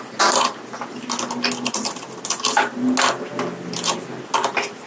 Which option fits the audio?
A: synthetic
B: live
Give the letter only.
B